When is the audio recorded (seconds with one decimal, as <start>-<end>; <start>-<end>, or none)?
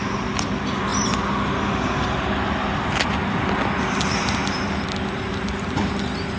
0.0-6.4